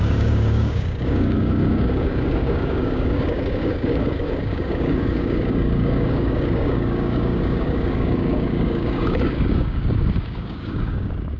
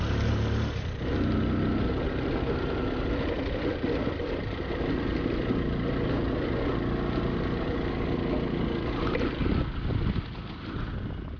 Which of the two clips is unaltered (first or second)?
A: second